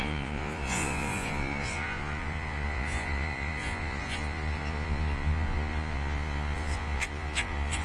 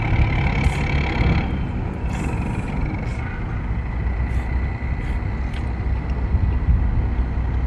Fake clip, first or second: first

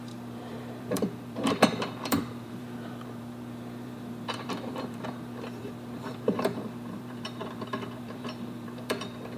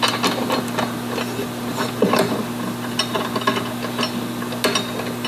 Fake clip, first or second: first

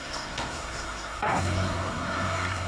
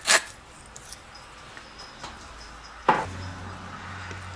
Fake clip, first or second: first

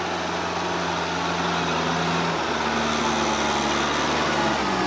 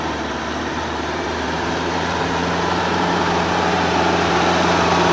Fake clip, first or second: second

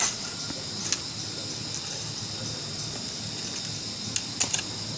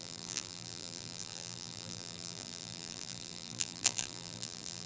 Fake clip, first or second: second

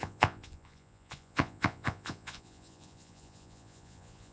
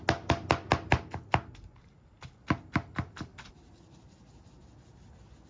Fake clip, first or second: first